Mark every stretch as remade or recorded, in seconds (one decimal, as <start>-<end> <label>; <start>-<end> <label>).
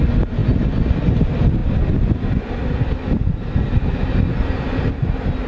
0.0-1.6 recorded; 1.6-4.9 remade; 4.9-5.5 recorded